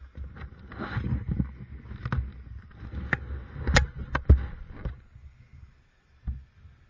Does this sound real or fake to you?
real